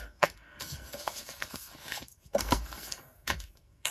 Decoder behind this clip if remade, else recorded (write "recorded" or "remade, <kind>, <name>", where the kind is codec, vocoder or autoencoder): remade, codec, SNAC